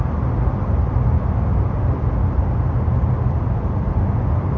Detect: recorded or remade recorded